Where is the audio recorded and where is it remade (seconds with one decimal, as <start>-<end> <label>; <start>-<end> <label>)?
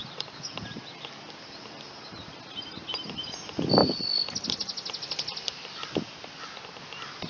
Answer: 0.0-0.8 remade; 0.8-7.3 recorded